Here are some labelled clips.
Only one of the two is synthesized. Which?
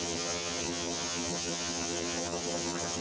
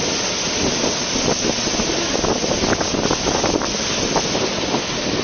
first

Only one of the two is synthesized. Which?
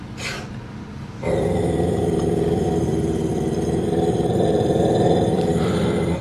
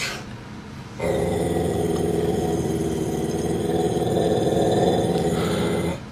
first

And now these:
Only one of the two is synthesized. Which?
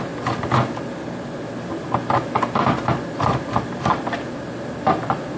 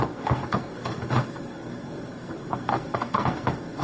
second